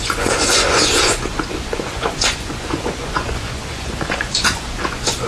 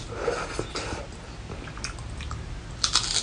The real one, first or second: second